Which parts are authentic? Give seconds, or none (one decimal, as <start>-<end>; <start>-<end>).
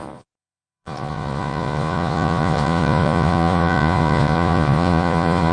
none